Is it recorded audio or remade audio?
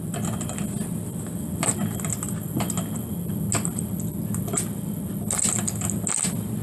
recorded